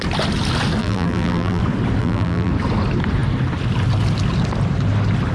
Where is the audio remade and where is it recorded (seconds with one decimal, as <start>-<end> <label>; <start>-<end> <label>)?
0.0-0.8 recorded; 0.8-1.6 remade; 1.6-2.0 recorded; 2.0-2.5 remade; 2.5-5.3 recorded